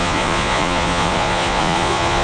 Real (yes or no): no